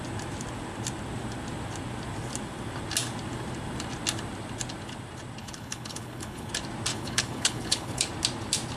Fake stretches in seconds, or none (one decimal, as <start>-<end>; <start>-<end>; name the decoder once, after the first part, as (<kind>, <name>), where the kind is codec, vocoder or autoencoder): 5.4-6.5 (codec, HILCodec); 6.9-8.1